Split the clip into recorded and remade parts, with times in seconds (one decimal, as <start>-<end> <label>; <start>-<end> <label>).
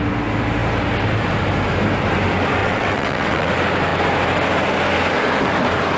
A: 0.0-2.6 recorded; 2.6-3.5 remade; 3.5-6.0 recorded